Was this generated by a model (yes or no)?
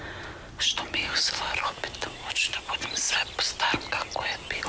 no